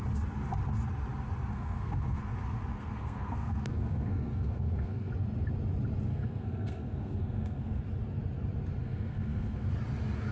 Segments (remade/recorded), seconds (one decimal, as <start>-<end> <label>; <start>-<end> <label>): 0.0-1.5 recorded; 1.5-2.2 remade; 2.2-2.7 recorded; 2.7-5.1 remade; 5.1-6.1 recorded; 6.1-7.8 remade; 7.8-8.8 recorded; 8.8-9.7 remade; 9.7-10.3 recorded